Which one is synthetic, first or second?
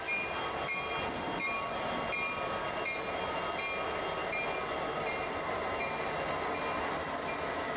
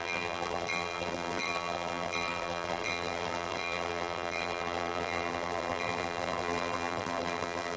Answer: second